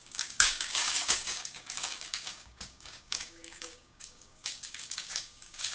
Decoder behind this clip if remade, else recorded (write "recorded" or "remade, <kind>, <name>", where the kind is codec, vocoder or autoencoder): remade, codec, DAC